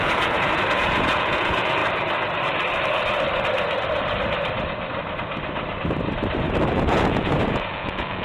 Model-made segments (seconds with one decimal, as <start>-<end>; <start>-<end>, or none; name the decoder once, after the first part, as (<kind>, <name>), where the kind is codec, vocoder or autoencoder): 0.0-1.8 (vocoder, Vocos); 6.7-8.2